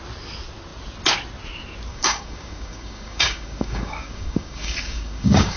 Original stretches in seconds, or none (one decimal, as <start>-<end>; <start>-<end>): 0.0-1.9